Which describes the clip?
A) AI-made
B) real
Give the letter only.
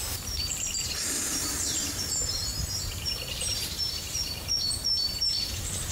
A